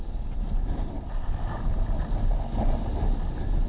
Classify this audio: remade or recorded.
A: recorded